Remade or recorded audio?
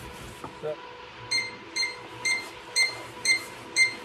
recorded